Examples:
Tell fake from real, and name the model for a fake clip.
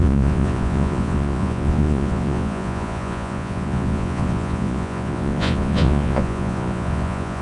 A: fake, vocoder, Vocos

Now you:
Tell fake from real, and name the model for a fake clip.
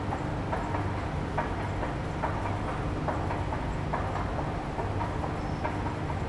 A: real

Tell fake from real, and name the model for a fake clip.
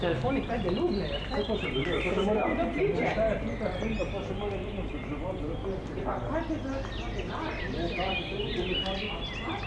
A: real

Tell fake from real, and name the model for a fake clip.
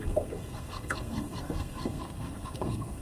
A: fake, codec, SNAC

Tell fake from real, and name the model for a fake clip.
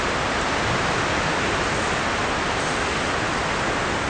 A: real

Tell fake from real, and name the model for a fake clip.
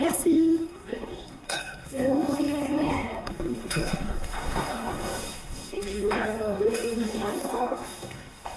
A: fake, codec, SNAC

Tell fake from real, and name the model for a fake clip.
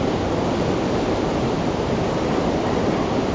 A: real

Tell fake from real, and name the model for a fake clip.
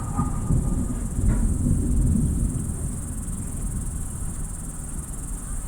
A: real